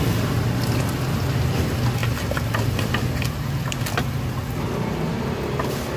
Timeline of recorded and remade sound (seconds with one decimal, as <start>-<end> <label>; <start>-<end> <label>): 0.0-6.0 recorded